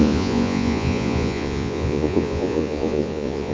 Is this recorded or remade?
remade